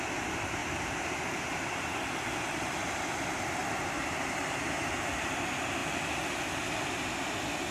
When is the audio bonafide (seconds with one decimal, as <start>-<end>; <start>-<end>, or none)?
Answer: 0.0-0.6; 1.9-3.6; 5.1-7.7